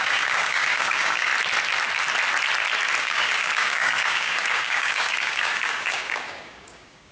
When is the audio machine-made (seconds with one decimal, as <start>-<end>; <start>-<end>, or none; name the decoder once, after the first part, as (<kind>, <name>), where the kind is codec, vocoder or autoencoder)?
0.0-1.3 (codec, DAC); 3.0-7.1